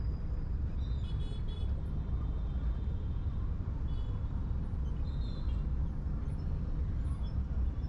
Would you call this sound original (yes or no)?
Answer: yes